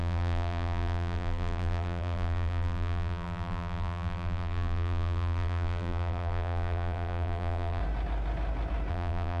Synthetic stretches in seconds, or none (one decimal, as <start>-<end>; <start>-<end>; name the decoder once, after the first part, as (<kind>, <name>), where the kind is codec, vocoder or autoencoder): 0.0-7.8 (vocoder, BigVGAN v2); 8.9-9.4